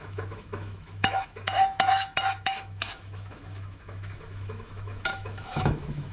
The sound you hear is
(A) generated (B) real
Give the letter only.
A